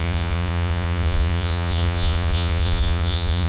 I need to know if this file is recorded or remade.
remade